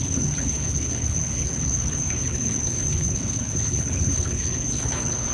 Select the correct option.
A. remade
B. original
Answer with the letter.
A